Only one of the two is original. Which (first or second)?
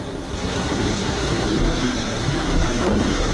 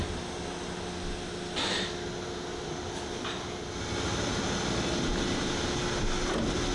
second